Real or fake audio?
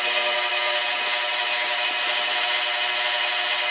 real